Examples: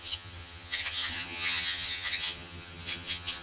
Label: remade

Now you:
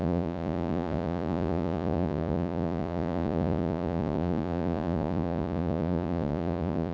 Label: remade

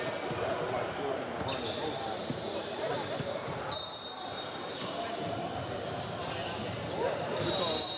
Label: recorded